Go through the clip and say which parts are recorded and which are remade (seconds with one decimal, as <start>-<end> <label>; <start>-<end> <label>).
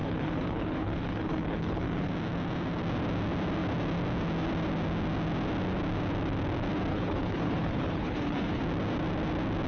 0.0-2.1 remade; 2.1-6.9 recorded; 6.9-8.6 remade; 8.6-9.7 recorded